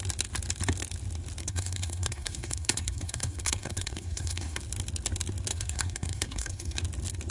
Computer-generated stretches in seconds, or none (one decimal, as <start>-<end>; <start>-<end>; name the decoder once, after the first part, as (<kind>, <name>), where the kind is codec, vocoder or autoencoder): 1.4-4.6 (codec, SNAC); 5.5-6.8